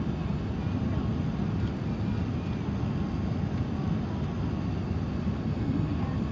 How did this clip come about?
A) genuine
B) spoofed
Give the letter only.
A